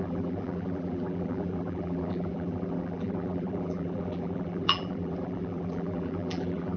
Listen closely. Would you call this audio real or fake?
fake